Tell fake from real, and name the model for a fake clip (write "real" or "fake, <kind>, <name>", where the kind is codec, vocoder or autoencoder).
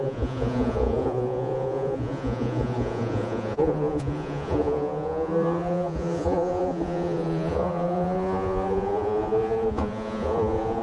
fake, vocoder, Vocos